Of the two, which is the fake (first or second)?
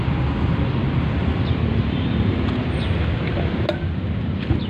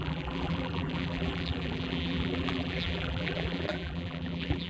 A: second